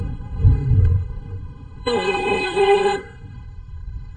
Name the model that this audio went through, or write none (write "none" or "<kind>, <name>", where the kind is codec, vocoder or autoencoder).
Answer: codec, SNAC